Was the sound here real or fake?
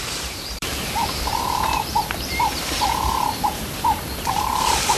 fake